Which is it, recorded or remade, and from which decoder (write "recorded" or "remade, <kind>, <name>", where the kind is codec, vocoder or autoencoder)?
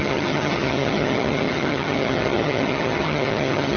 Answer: remade, vocoder, HiFi-GAN